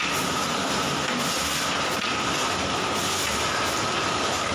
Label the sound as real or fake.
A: real